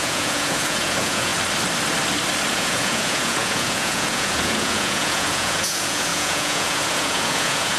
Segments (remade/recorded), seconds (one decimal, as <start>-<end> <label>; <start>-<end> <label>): 0.0-1.3 remade; 1.3-2.5 recorded; 2.5-7.8 remade